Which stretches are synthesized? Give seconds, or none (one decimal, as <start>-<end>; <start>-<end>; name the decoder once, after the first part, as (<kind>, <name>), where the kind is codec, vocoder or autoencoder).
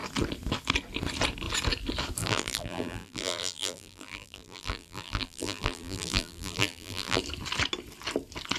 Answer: 2.2-7.2 (vocoder, BigVGAN v2)